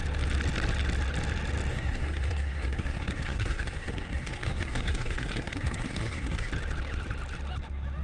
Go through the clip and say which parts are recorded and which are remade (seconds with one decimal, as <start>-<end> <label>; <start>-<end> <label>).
0.0-1.7 recorded; 1.7-6.5 remade; 6.5-8.0 recorded